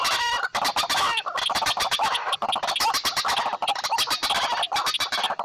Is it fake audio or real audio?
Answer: real